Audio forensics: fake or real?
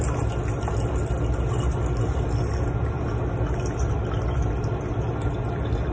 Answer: real